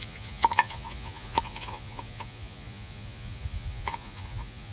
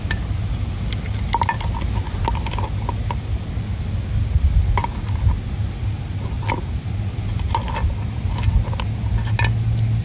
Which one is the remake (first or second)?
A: first